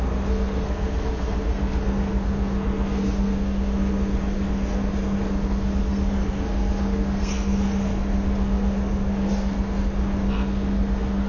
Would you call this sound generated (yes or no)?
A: yes